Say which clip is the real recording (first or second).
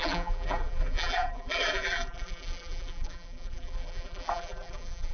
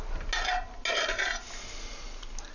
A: second